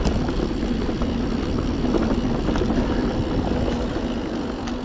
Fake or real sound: real